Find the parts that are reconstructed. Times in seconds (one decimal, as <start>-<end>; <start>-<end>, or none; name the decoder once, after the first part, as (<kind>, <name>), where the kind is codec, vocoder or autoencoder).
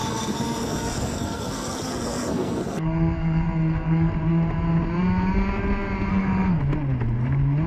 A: 0.0-4.1 (codec, SNAC); 6.1-6.6